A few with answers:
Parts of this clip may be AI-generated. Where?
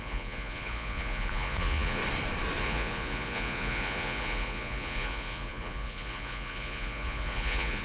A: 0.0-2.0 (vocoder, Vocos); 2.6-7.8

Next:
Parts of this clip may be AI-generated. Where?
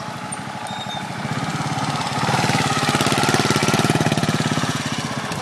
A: 3.6-4.8 (vocoder, Vocos)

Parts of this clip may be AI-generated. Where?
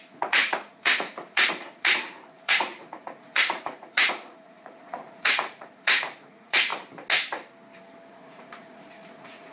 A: 0.0-6.7 (vocoder, Vocos); 8.1-9.5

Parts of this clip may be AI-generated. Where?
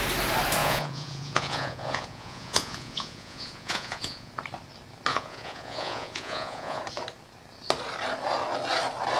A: 0.6-4.3 (vocoder, Vocos); 5.1-6.8